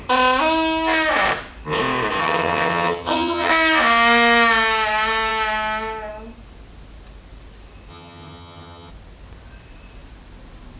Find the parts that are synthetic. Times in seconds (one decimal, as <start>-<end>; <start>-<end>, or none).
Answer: 2.2-3.5; 7.9-8.9